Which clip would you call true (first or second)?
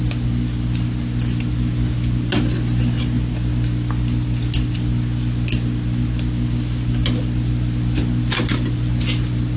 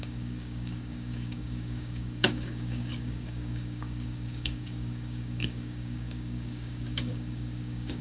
first